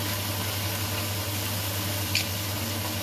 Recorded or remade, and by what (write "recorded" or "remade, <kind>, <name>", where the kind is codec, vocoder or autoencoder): recorded